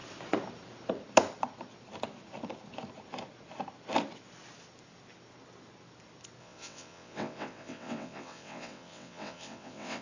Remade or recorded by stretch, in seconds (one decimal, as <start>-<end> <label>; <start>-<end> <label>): 0.0-6.4 recorded; 6.4-10.0 remade